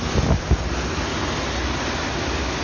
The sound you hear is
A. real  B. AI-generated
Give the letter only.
A